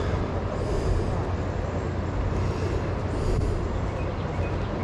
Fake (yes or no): no